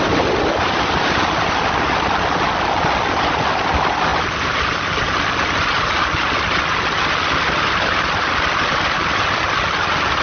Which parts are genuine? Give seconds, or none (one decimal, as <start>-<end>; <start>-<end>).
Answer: 0.0-10.2